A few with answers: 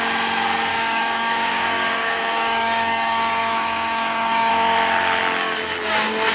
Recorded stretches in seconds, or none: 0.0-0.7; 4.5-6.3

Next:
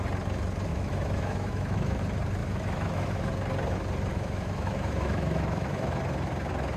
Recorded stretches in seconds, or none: 0.0-0.7; 2.0-2.4; 3.3-4.1; 6.0-6.8

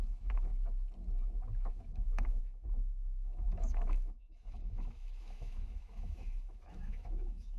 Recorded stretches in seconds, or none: 0.5-1.7

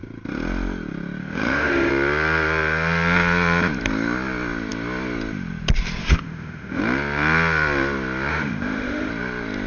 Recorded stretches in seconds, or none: 0.0-1.2; 1.9-6.0; 6.8-8.3; 9.1-9.7

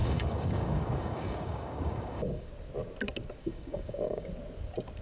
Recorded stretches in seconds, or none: 2.5-3.4; 4.3-5.0